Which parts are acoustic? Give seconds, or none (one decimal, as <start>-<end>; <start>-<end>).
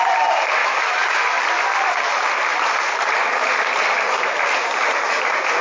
0.0-0.6; 1.4-5.6